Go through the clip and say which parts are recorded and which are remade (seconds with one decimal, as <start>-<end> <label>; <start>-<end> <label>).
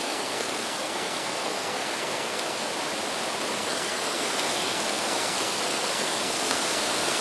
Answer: 0.0-2.7 remade; 2.7-3.5 recorded; 3.5-7.2 remade